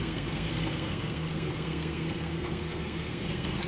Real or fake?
fake